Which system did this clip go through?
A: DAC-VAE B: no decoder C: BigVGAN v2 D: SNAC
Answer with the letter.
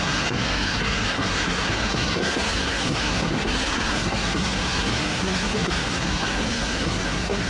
D